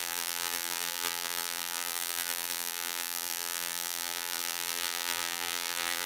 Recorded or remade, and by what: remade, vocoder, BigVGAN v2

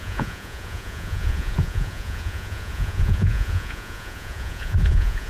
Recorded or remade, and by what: remade, vocoder, Vocos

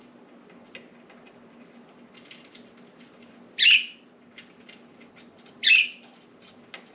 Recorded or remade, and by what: recorded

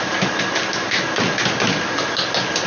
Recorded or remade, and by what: recorded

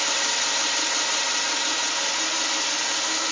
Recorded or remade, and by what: recorded